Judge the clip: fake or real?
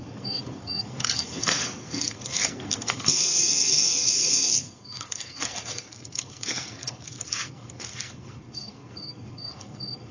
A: fake